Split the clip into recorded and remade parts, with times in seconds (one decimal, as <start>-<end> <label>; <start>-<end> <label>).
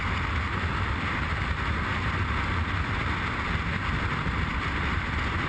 0.0-5.5 recorded